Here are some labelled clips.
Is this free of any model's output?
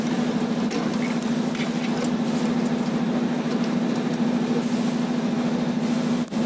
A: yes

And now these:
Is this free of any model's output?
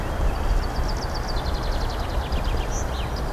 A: yes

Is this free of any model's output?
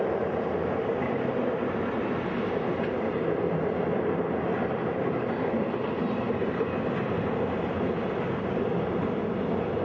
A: yes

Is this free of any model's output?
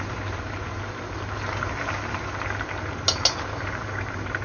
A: yes